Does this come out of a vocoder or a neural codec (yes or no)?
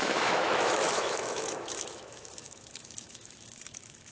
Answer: yes